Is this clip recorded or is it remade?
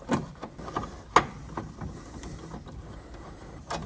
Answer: recorded